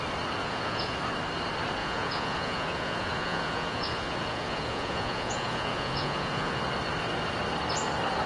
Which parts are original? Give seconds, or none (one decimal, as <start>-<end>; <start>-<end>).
0.0-0.4; 1.0-1.8; 6.6-8.3